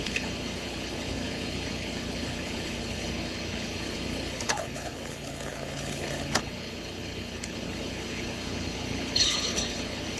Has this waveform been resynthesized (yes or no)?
yes